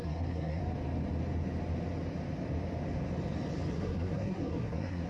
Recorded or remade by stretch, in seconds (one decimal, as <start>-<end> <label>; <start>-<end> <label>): 0.0-0.6 remade; 0.6-3.7 recorded; 3.7-5.1 remade